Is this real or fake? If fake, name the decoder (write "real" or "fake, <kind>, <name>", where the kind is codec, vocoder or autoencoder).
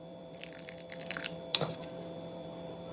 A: fake, vocoder, BigVGAN v2